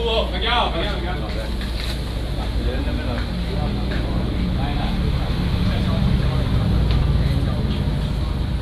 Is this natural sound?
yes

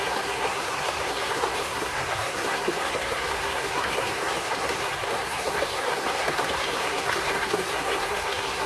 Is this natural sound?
no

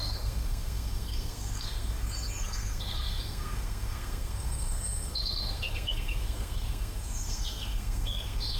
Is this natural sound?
no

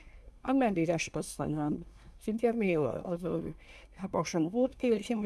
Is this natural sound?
no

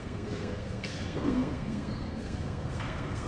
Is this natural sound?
no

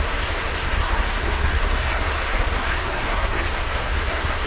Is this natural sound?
no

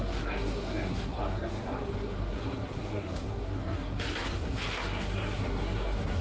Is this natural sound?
no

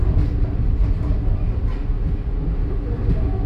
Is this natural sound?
yes